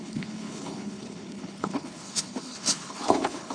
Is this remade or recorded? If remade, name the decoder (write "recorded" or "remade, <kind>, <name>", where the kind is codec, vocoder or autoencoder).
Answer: remade, codec, HILCodec